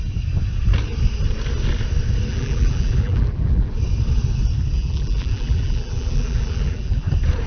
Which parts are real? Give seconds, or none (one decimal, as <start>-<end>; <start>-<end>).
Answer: 0.0-2.3; 3.7-4.8; 7.1-7.5